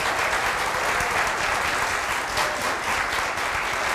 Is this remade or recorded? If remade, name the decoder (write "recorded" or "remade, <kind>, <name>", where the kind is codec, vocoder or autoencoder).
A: recorded